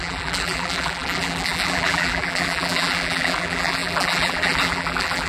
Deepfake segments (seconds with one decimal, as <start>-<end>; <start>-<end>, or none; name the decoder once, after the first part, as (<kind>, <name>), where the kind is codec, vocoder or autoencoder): 0.0-5.3 (vocoder, BigVGAN v2)